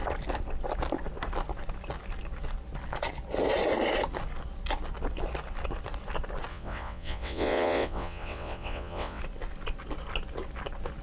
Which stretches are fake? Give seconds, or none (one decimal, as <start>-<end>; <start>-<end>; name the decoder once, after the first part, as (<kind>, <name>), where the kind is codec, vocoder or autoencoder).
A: 6.5-9.2 (vocoder, WaveNeXt)